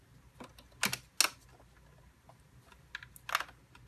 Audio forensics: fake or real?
real